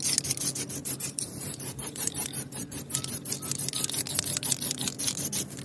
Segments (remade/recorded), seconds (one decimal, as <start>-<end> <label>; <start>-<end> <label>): 0.0-0.8 recorded; 0.8-2.9 remade; 2.9-5.6 recorded